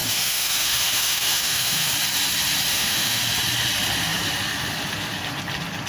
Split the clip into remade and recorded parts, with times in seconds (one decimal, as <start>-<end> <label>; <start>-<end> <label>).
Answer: 0.0-1.9 remade; 1.9-2.7 recorded; 2.7-3.2 remade; 3.2-5.9 recorded